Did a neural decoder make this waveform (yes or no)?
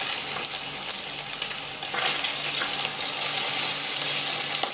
no